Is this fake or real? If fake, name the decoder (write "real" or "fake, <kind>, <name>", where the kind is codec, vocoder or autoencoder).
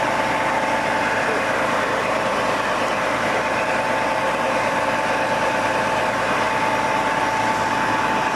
real